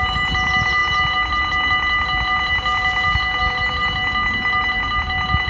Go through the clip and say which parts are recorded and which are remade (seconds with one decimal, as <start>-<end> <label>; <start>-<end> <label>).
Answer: 0.0-5.5 recorded